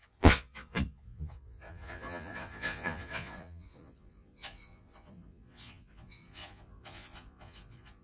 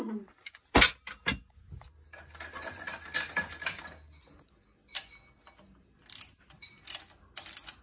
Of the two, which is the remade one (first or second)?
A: first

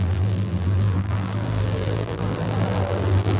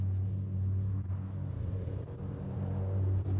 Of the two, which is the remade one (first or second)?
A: first